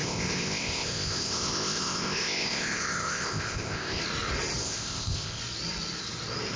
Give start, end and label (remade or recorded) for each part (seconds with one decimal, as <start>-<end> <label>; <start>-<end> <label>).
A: 0.0-4.0 remade; 4.0-4.6 recorded; 4.6-5.4 remade; 5.4-6.6 recorded